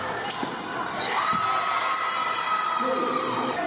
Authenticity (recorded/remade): recorded